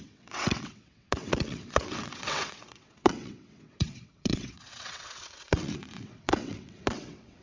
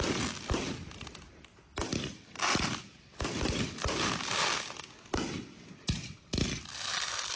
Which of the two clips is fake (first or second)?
first